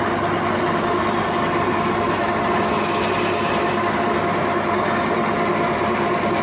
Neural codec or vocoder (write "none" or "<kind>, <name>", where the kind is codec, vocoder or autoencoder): none